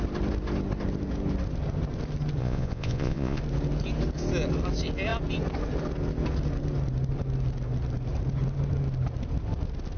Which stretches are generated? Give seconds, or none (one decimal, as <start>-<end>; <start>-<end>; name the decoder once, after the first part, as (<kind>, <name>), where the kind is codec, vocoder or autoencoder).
2.4-3.4 (vocoder, Vocos)